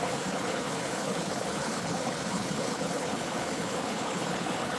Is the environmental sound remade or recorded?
remade